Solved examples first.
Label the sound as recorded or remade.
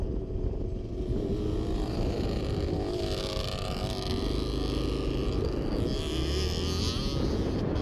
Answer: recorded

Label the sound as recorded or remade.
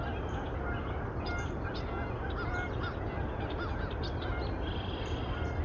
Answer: recorded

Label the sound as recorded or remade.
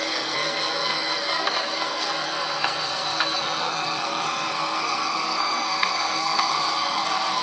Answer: remade